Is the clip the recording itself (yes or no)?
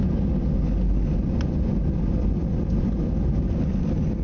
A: yes